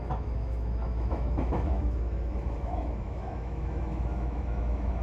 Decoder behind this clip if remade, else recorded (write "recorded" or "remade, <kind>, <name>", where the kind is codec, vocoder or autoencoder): remade, autoencoder, DAC-VAE